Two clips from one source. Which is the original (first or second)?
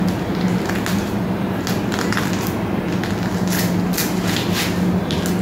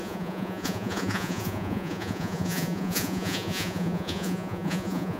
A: first